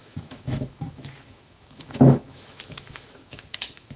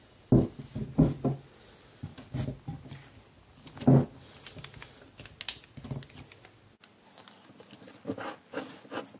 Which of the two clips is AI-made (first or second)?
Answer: first